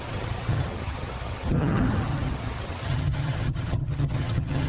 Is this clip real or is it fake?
fake